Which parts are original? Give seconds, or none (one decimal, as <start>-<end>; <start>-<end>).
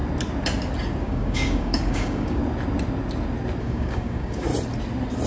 0.0-1.0; 2.4-3.6; 4.5-5.3